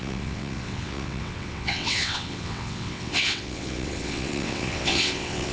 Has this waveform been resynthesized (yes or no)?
yes